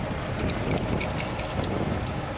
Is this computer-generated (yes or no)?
no